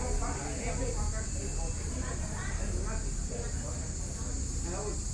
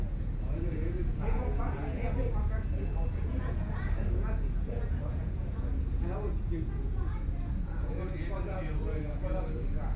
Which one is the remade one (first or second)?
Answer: second